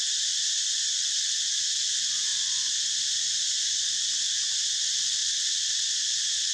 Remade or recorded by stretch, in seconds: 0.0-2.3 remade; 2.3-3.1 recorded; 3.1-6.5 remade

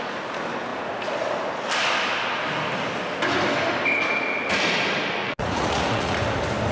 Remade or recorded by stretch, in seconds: 0.0-5.2 recorded; 5.2-6.2 remade; 6.2-6.7 recorded

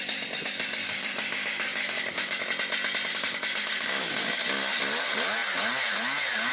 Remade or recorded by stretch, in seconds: 0.0-0.8 recorded; 0.8-2.4 remade; 2.4-3.1 recorded; 3.1-4.3 remade; 4.3-6.5 recorded

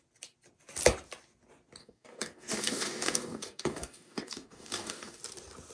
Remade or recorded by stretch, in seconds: 0.0-1.8 recorded; 1.8-5.2 remade; 5.2-5.7 recorded

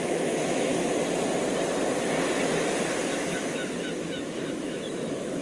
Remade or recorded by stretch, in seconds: 0.0-0.7 remade; 0.7-3.1 recorded; 3.1-5.4 remade

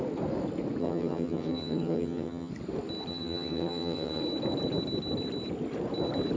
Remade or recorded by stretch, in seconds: 0.0-0.8 recorded; 0.8-2.5 remade; 2.5-3.1 recorded; 3.1-4.2 remade; 4.2-6.4 recorded

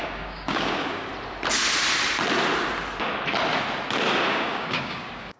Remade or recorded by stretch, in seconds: 0.0-1.1 remade; 1.1-4.3 recorded; 4.3-5.4 remade

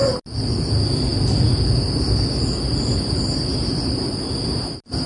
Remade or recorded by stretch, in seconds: 0.0-5.1 recorded